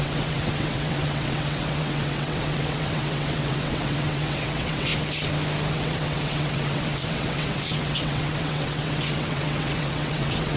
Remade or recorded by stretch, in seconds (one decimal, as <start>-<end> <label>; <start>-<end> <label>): 0.0-4.9 remade; 4.9-5.7 recorded; 5.7-10.6 remade